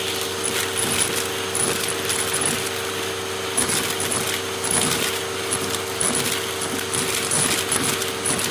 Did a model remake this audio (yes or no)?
no